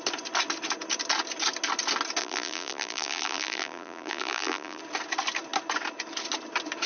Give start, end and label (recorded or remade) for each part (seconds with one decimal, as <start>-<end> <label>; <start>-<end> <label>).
0.0-2.2 recorded; 2.2-4.8 remade; 4.8-6.9 recorded